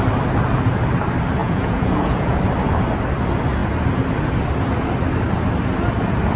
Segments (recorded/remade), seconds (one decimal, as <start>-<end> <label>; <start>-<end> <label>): 0.0-1.4 recorded; 1.4-2.4 remade; 2.4-6.4 recorded